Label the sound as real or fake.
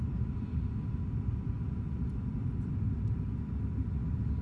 real